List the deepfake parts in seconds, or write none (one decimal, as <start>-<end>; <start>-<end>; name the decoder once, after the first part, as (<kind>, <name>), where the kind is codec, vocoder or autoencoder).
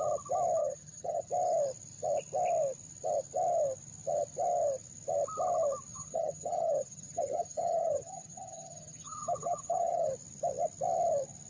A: 0.6-1.3 (vocoder, HiFi-GAN); 5.9-10.1